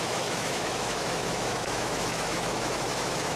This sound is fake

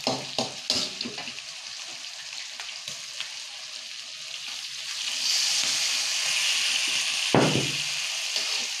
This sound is real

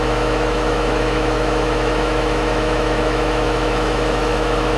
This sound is fake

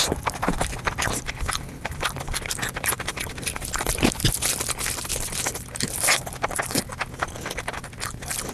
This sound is real